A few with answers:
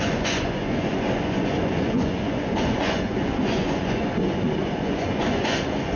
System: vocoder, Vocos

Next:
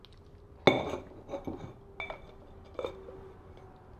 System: none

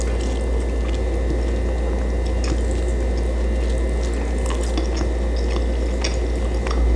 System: none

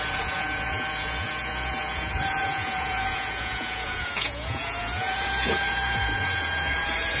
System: vocoder, Vocos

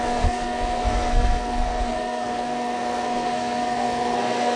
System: codec, SNAC